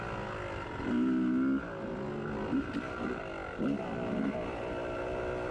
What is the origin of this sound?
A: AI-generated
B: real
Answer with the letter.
B